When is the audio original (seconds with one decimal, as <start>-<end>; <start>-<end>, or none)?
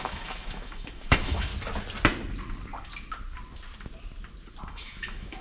1.5-4.7